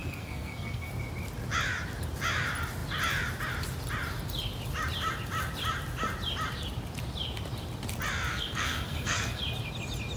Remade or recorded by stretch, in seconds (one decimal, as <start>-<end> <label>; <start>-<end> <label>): 0.0-0.9 remade; 0.9-8.3 recorded; 8.3-9.4 remade; 9.4-10.2 recorded